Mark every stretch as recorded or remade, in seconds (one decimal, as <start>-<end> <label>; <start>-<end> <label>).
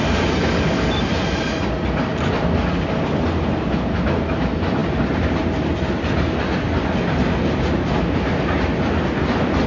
0.0-9.7 recorded